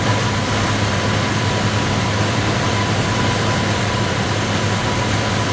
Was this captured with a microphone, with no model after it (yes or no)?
no